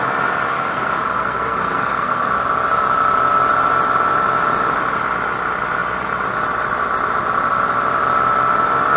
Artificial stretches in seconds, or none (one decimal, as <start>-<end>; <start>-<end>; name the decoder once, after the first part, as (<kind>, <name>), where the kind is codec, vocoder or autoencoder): 0.5-2.3 (codec, SNAC)